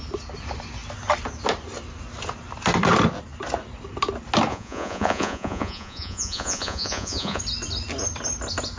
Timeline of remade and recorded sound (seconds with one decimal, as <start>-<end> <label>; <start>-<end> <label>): 0.0-4.5 recorded; 4.5-7.4 remade; 7.4-8.8 recorded